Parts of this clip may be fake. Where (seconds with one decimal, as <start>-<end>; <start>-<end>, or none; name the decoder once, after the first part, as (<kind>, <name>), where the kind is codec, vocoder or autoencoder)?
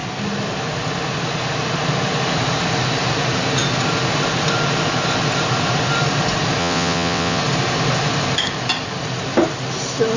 6.6-7.4 (vocoder, WaveNeXt)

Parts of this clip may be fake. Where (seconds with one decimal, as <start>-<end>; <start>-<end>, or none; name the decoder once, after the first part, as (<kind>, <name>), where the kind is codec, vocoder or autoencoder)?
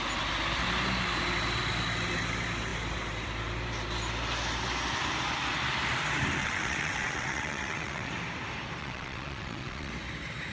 6.4-8.1 (vocoder, WaveNeXt); 8.8-9.9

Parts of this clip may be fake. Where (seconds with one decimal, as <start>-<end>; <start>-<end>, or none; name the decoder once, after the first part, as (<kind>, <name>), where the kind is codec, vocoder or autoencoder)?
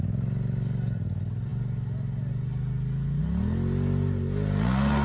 none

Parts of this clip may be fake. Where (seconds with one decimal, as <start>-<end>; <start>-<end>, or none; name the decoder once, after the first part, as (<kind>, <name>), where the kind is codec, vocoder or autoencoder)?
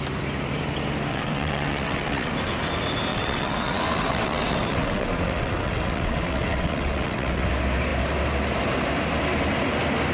1.1-2.3 (vocoder, WaveNeXt); 3.1-7.5